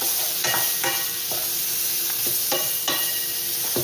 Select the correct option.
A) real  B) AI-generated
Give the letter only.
A